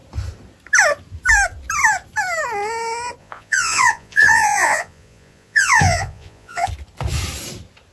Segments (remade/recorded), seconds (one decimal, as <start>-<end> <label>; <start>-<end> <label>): 0.0-3.2 recorded; 3.2-6.7 remade; 6.7-7.9 recorded